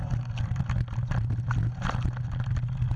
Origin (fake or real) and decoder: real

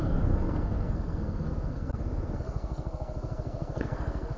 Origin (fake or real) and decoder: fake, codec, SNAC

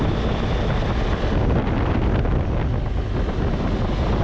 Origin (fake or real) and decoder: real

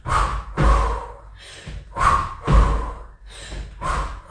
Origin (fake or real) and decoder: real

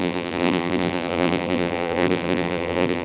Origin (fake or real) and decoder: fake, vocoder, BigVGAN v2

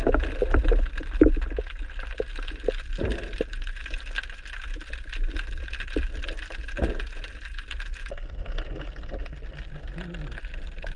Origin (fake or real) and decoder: real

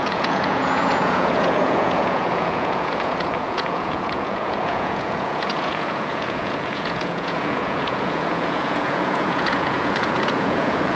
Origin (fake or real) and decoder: fake, vocoder, Vocos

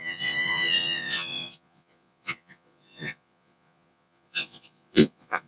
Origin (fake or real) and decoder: fake, vocoder, Vocos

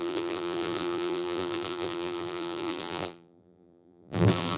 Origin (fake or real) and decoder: fake, vocoder, BigVGAN v2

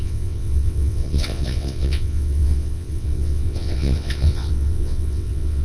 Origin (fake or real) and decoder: fake, vocoder, WaveNeXt